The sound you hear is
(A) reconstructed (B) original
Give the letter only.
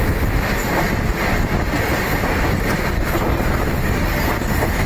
B